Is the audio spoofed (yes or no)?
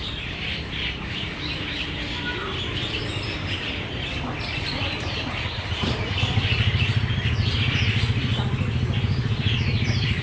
yes